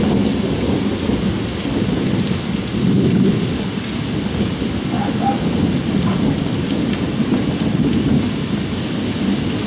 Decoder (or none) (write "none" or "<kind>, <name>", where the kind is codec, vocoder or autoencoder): none